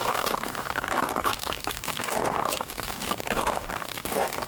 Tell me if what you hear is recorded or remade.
remade